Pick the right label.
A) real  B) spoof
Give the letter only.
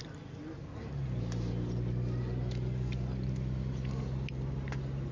A